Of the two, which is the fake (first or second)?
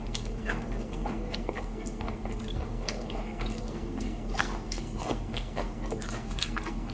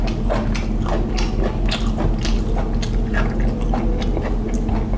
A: first